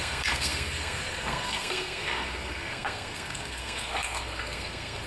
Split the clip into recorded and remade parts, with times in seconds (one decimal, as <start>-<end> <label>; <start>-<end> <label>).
0.0-5.1 remade